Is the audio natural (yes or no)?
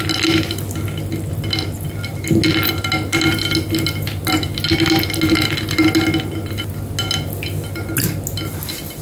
yes